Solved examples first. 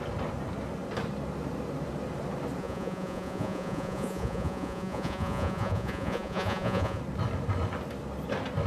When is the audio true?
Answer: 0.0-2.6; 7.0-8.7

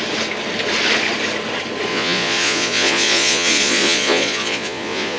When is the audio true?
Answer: 0.0-1.9